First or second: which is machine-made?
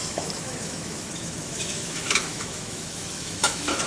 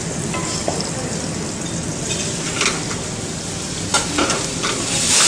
first